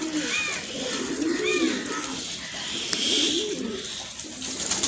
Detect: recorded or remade recorded